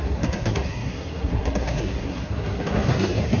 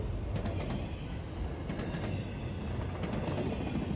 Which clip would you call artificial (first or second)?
first